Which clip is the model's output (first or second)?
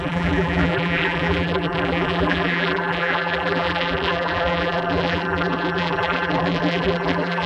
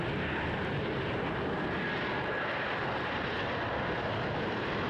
first